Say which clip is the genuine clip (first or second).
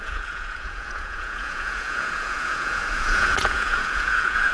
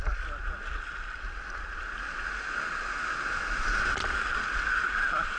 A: second